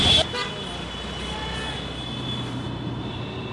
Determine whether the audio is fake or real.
real